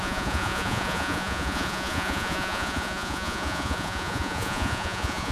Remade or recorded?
remade